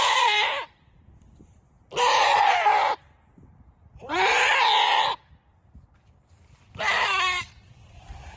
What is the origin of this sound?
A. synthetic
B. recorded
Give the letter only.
A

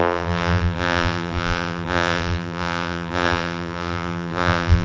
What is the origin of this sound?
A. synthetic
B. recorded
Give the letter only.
A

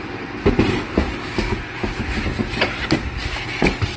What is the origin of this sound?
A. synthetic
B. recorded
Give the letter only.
B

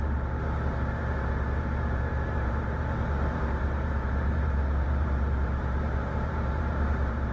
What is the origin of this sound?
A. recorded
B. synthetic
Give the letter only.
B